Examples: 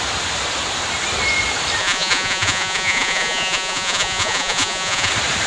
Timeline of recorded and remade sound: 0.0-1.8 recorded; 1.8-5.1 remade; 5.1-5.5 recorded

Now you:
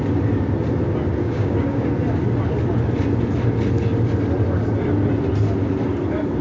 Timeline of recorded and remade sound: 0.0-1.2 recorded; 1.2-1.9 remade; 1.9-6.4 recorded

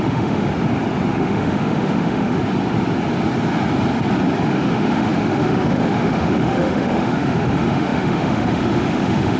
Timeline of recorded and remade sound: 0.0-0.5 remade; 0.5-1.1 recorded; 1.1-2.4 remade; 2.4-4.5 recorded; 4.5-9.4 remade

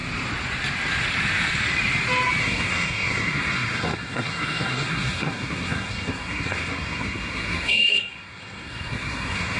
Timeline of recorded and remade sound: 0.0-2.4 recorded; 2.4-9.6 remade

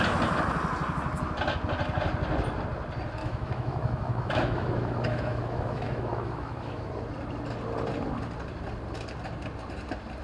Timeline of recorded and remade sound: 0.0-3.2 recorded; 3.2-6.9 remade; 6.9-10.2 recorded